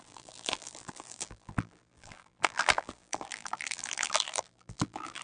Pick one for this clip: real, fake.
fake